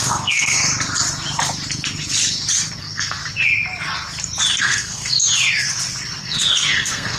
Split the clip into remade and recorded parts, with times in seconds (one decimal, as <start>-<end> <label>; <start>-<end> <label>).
0.0-0.6 remade; 0.6-2.8 recorded; 2.8-3.2 remade; 3.2-4.6 recorded; 4.6-5.3 remade; 5.3-6.2 recorded; 6.2-7.2 remade